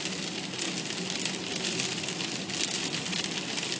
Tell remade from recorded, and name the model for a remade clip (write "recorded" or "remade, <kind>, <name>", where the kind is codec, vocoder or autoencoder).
recorded